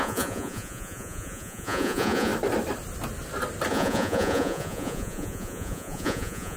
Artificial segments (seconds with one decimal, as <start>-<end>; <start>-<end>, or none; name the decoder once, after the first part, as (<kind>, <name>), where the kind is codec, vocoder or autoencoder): 0.0-2.3 (vocoder, Vocos); 3.7-6.6